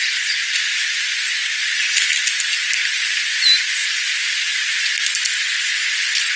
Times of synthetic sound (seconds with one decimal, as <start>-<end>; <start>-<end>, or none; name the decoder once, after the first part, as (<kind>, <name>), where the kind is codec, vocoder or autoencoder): 3.8-4.8 (vocoder, BigVGAN v2)